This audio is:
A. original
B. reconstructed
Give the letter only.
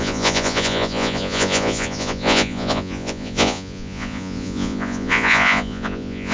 B